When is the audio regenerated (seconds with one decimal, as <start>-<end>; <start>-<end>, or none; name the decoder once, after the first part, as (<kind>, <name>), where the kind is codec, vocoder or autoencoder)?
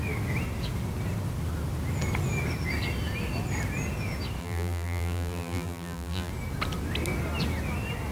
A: 4.4-6.3 (vocoder, BigVGAN v2)